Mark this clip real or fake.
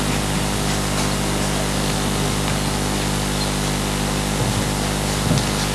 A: real